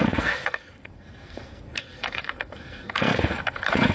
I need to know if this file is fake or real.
fake